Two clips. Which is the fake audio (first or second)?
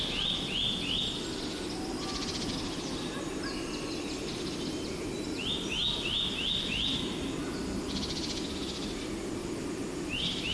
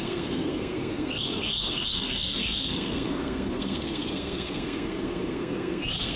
second